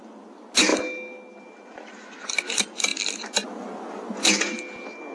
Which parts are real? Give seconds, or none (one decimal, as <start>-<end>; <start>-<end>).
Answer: 0.0-5.1